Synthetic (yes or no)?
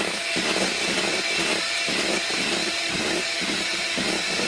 yes